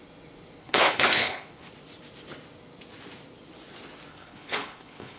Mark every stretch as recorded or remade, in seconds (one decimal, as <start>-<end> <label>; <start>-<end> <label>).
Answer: 0.0-0.6 recorded; 0.6-1.7 remade; 1.7-4.1 recorded; 4.1-5.2 remade